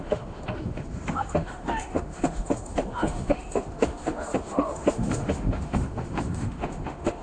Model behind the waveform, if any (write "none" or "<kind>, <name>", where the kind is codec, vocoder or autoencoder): autoencoder, DAC-VAE